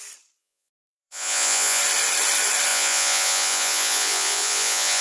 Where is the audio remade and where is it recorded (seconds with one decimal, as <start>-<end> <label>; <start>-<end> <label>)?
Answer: 0.0-0.4 recorded; 0.4-1.8 remade; 1.8-2.7 recorded; 2.7-5.0 remade